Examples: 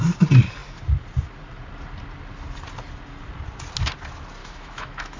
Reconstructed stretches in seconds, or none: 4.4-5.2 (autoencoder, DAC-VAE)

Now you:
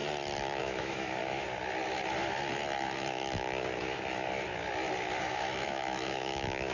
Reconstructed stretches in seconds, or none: 0.6-1.2 (autoencoder, DAC-VAE); 5.2-6.7

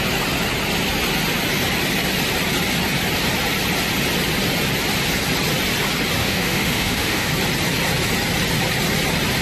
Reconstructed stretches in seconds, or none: 6.2-7.3 (autoencoder, DAC-VAE)

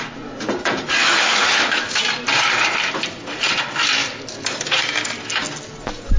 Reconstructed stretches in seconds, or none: 1.0-2.0 (autoencoder, DAC-VAE)